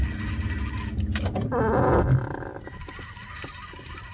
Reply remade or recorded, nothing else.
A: recorded